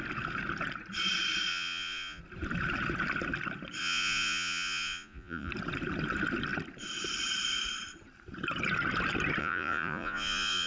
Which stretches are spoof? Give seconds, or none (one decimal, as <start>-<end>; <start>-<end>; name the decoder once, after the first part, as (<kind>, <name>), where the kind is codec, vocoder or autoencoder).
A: 1.5-2.2 (vocoder, Vocos); 3.8-5.5; 9.4-10.7